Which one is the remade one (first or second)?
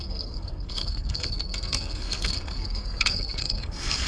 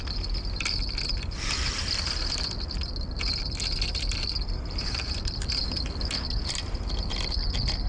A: first